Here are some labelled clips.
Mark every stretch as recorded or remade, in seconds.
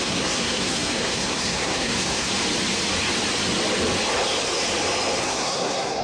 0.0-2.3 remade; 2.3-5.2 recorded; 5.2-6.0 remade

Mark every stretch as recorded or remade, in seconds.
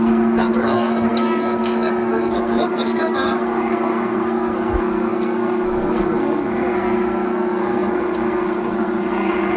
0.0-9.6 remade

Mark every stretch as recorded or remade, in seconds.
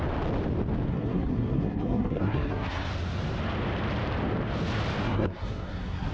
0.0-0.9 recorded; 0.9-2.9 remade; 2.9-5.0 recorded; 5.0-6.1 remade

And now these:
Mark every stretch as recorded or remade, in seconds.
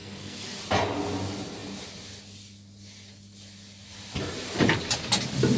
0.0-0.6 remade; 0.6-5.6 recorded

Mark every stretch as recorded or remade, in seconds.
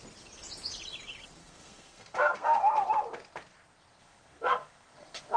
0.0-1.4 recorded; 1.4-2.9 remade; 2.9-4.0 recorded; 4.0-5.4 remade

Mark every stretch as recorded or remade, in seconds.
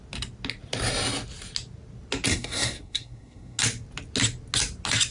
0.0-2.3 recorded; 2.3-3.6 remade; 3.6-5.1 recorded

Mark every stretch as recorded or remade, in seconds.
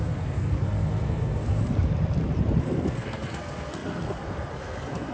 0.0-1.6 remade; 1.6-2.6 recorded; 2.6-5.1 remade